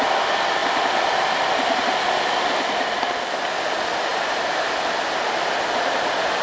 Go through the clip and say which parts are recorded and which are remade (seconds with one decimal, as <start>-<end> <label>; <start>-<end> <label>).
0.0-4.1 recorded; 4.1-4.8 remade; 4.8-6.4 recorded